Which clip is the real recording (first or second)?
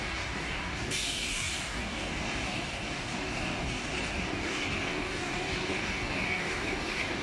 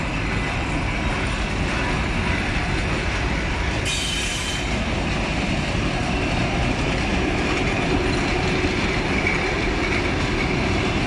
second